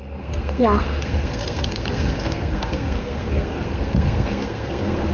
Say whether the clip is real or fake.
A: fake